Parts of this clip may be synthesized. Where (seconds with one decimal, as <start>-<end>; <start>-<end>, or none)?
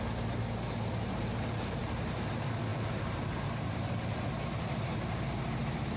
1.8-2.3; 2.7-3.9